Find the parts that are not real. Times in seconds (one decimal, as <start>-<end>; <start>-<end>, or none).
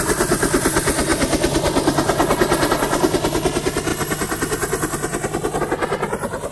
none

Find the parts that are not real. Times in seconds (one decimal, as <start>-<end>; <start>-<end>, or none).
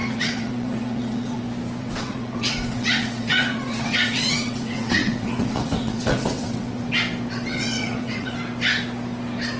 0.0-1.4; 1.8-6.8; 7.5-8.3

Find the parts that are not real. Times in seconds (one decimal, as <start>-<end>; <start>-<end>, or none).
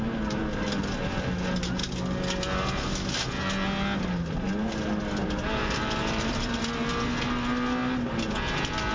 5.6-6.6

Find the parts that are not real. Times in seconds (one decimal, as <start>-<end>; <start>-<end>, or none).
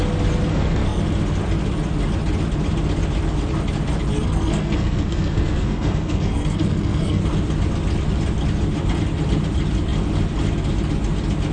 0.5-1.0; 4.1-7.2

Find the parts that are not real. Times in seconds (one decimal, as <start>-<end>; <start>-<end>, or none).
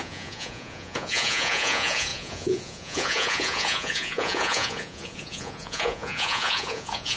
0.0-7.2